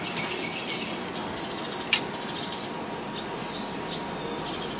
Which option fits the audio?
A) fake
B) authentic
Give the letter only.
B